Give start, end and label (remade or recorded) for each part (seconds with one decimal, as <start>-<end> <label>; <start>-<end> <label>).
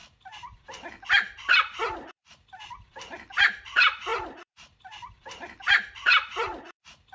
0.0-2.1 recorded; 2.1-7.1 remade